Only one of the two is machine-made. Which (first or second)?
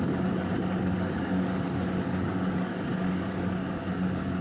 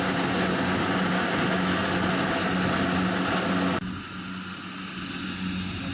first